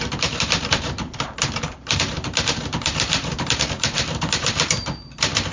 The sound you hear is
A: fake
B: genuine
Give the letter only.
A